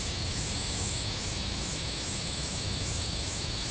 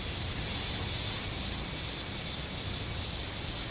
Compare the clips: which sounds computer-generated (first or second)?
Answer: first